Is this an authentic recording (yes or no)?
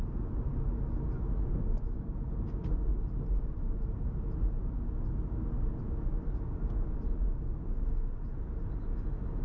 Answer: yes